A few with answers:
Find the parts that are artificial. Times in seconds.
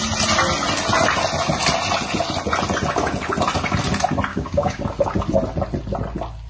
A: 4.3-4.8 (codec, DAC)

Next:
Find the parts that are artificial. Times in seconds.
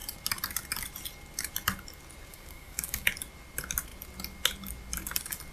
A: 2.3-3.1 (codec, DAC)